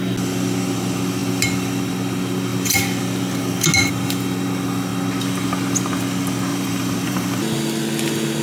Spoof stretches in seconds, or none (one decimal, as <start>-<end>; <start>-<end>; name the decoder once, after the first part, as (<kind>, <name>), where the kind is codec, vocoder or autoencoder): 6.5-7.4 (vocoder, BigVGAN v2)